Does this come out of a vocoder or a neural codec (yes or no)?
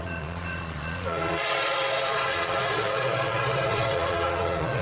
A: yes